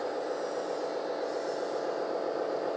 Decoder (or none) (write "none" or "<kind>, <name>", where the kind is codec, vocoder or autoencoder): none